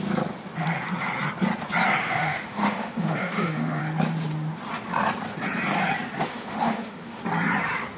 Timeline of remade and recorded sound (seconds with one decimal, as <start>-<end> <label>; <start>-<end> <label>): 0.0-2.0 recorded; 2.0-3.8 remade; 3.8-6.3 recorded; 6.3-7.2 remade; 7.2-8.0 recorded